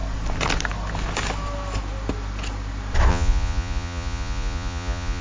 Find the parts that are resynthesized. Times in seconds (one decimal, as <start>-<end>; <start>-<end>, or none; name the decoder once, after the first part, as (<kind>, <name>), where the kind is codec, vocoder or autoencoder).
3.1-5.2 (vocoder, Vocos)